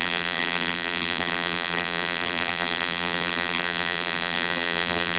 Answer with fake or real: fake